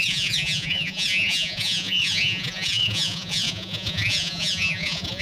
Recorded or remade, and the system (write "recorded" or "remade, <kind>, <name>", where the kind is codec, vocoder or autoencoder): remade, vocoder, Vocos